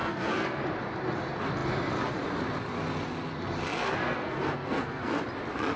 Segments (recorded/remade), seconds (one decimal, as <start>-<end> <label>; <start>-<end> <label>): 0.0-0.6 remade; 0.6-3.8 recorded; 3.8-5.2 remade; 5.2-5.8 recorded